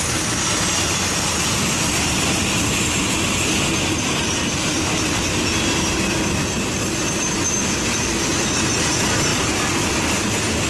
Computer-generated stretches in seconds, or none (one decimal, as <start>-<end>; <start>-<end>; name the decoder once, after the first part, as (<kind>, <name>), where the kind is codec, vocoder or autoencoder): none